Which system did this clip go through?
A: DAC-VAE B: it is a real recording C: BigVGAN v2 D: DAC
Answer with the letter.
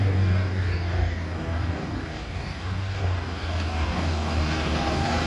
D